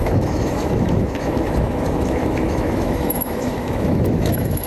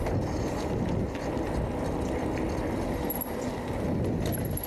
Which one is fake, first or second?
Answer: first